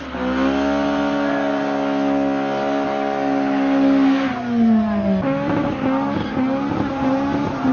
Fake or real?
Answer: real